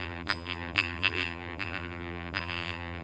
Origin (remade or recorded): remade